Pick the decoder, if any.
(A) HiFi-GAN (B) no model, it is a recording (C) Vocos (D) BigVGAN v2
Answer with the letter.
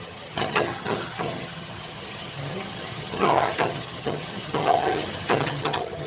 A